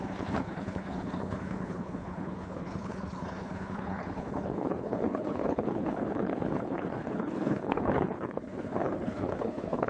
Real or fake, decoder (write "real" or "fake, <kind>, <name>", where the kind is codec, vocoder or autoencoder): fake, codec, HILCodec